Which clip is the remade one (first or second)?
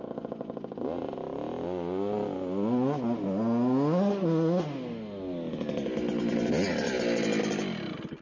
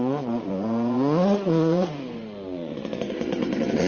second